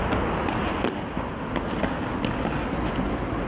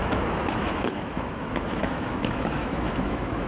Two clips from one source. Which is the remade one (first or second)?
second